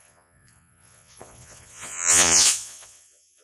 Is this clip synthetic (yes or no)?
yes